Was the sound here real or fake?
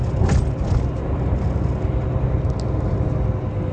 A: real